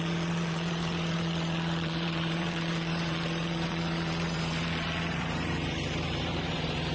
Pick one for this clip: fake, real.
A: fake